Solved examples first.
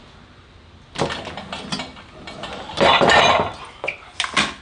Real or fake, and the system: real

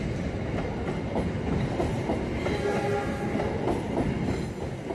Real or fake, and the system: real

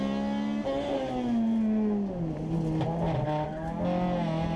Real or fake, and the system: real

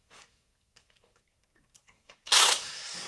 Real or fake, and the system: fake, codec, SNAC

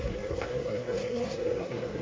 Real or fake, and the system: fake, codec, SNAC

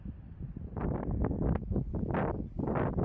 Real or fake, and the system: real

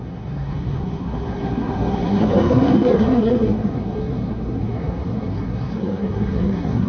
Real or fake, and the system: fake, codec, SNAC